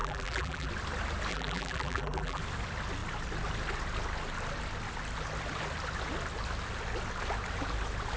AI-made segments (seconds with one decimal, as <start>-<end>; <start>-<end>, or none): 0.0-0.7; 1.3-2.4